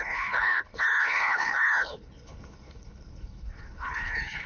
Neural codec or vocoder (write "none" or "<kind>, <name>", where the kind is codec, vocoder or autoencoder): codec, HILCodec